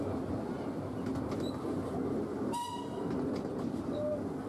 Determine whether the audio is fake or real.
real